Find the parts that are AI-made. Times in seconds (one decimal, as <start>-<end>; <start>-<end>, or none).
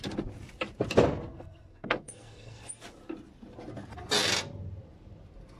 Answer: 1.3-2.7